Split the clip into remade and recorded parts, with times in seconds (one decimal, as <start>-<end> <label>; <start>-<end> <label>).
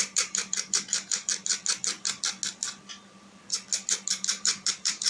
0.0-1.3 remade; 1.3-4.1 recorded; 4.1-5.1 remade